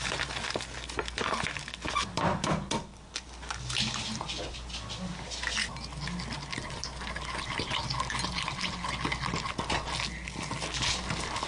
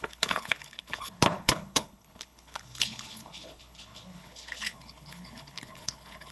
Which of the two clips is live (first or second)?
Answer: first